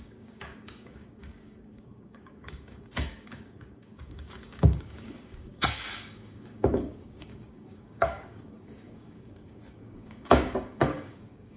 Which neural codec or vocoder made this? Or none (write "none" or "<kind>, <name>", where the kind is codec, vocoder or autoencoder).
codec, DAC